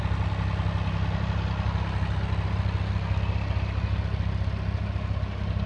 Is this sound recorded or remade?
recorded